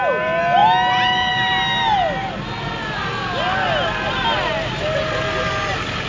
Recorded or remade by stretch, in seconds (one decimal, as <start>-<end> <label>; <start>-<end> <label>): 0.0-6.1 recorded